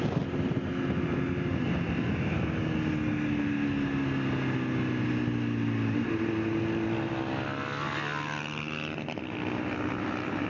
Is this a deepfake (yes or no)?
no